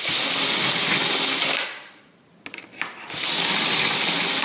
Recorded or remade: recorded